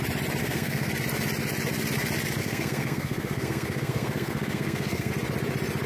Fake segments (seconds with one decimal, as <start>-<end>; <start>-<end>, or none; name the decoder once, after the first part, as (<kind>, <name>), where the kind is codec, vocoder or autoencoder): 0.4-0.9 (codec, SNAC); 2.4-5.1